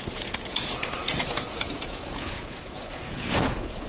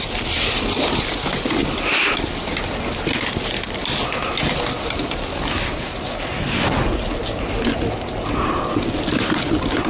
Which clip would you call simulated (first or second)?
first